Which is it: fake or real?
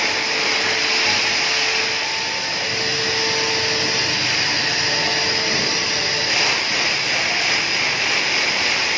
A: real